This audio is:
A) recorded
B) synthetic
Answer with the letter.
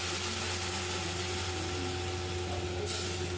A